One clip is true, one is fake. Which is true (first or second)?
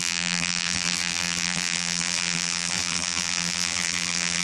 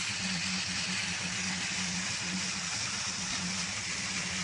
second